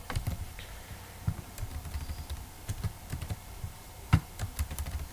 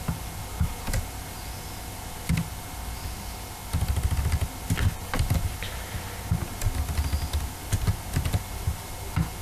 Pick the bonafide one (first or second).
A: second